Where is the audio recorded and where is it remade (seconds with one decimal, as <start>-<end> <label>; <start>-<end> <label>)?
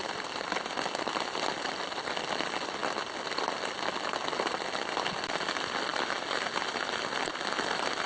0.0-8.1 recorded